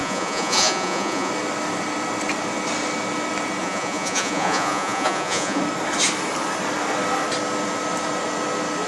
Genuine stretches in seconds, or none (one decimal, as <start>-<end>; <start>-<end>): 1.3-3.6; 5.6-8.9